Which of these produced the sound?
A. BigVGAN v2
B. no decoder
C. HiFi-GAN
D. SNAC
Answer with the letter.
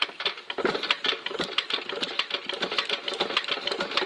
B